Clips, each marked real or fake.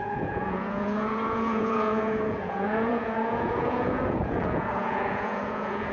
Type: fake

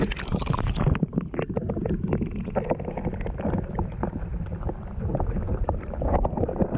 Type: real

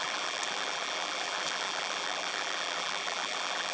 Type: fake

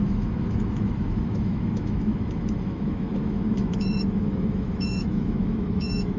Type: fake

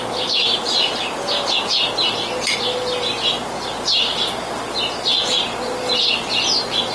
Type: real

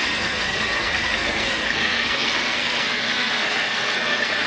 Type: fake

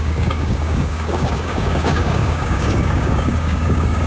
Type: fake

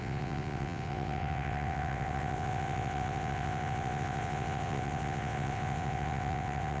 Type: fake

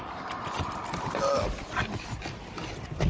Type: real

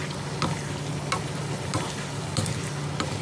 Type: real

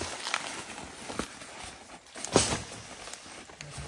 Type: real